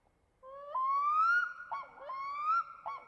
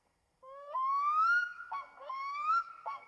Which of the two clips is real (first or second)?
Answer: first